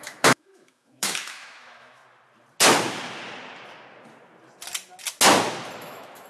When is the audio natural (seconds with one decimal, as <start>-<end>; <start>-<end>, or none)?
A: 2.0-5.8